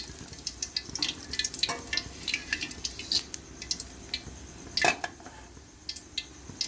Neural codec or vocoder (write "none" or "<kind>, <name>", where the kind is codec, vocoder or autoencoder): none